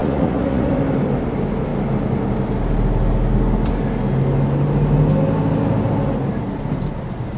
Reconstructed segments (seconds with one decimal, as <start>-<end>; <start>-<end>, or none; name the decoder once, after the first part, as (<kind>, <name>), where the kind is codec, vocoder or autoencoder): 0.0-0.7 (vocoder, Vocos)